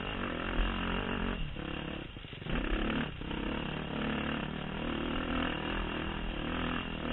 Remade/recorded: recorded